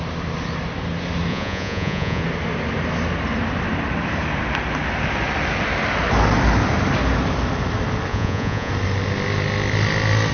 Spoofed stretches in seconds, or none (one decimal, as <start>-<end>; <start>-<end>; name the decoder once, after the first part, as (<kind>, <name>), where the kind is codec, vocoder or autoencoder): 1.3-2.2 (vocoder, Vocos); 8.1-8.7